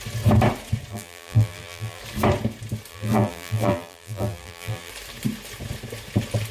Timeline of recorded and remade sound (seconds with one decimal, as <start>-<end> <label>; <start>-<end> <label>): 0.0-0.9 recorded; 0.9-2.0 remade; 2.0-2.9 recorded; 2.9-4.9 remade; 4.9-6.5 recorded